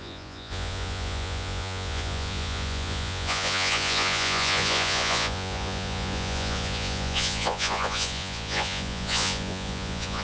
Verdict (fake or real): fake